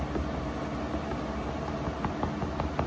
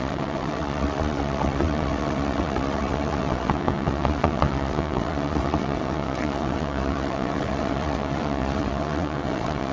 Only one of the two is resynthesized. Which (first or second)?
second